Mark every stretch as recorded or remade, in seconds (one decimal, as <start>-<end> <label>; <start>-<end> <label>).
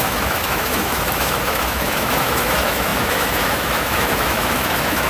0.0-5.1 remade